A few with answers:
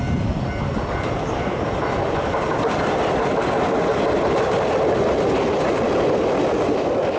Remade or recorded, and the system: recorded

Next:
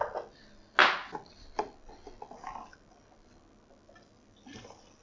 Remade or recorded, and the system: recorded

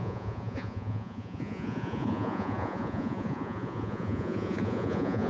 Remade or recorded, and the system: remade, vocoder, Vocos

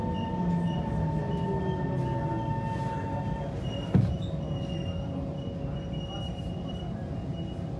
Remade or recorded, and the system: recorded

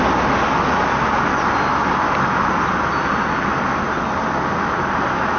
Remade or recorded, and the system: recorded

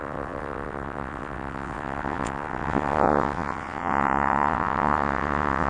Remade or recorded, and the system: remade, vocoder, WaveNeXt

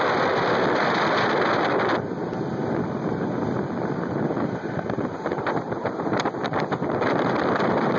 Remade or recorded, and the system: remade, vocoder, BigVGAN v2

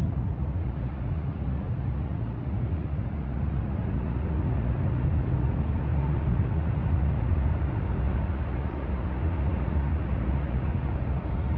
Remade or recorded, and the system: remade, vocoder, Vocos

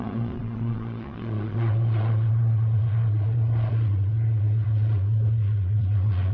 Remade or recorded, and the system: remade, vocoder, Vocos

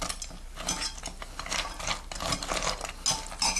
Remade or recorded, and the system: recorded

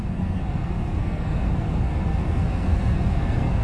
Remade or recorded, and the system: remade, codec, SNAC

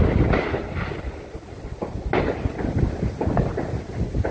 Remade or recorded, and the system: recorded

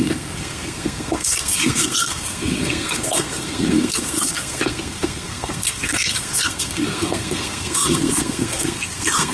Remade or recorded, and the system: remade, codec, SNAC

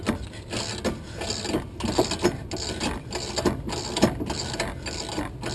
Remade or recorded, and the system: recorded